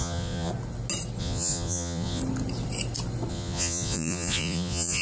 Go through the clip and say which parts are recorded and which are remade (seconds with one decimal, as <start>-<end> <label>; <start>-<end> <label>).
0.0-0.5 remade; 0.5-1.2 recorded; 1.2-2.2 remade; 2.2-3.3 recorded; 3.3-5.0 remade